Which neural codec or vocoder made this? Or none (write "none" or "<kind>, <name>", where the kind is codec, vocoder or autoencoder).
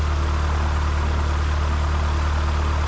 none